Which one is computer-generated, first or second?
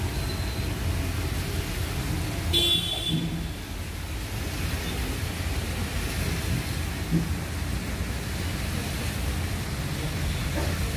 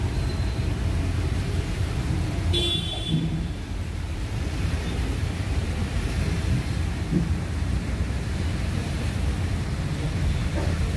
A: second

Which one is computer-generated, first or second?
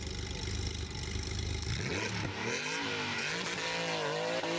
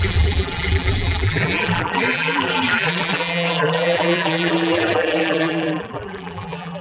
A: second